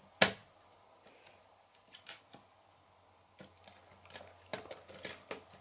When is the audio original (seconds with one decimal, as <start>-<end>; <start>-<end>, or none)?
0.0-5.6